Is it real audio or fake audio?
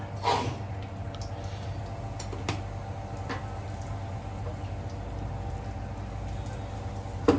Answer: real